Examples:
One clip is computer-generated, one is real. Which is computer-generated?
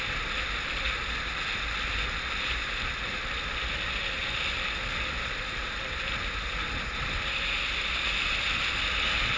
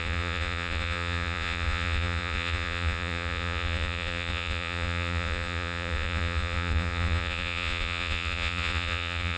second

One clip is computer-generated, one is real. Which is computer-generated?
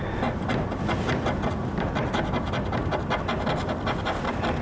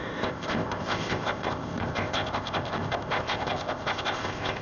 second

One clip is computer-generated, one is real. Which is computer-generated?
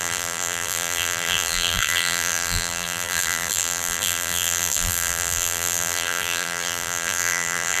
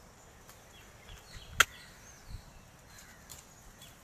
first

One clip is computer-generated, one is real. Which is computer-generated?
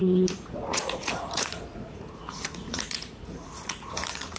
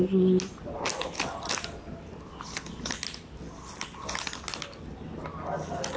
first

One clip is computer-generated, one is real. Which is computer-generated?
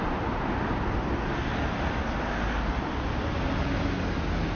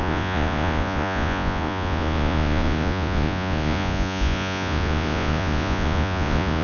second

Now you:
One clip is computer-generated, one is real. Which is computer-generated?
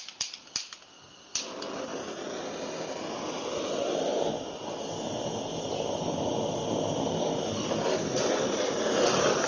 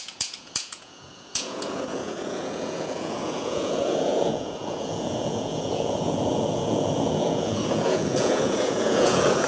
second